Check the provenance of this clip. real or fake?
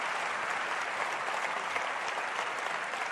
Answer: real